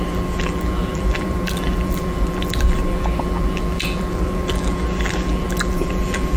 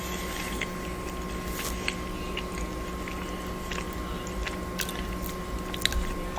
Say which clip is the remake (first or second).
first